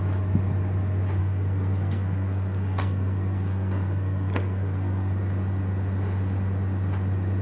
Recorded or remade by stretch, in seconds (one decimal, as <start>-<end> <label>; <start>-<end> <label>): 0.0-1.2 recorded; 1.2-5.2 remade; 5.2-7.4 recorded